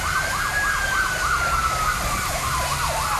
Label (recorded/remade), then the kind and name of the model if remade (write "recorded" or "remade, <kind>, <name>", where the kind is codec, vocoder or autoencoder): recorded